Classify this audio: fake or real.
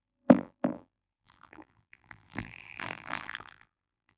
fake